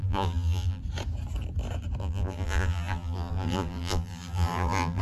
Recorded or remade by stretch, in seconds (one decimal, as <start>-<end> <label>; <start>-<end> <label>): 0.0-0.8 remade; 0.8-2.0 recorded; 2.0-5.0 remade